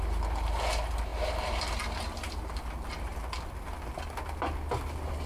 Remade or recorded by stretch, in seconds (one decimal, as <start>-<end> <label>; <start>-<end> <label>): 0.0-5.3 recorded